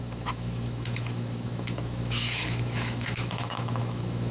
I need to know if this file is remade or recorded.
remade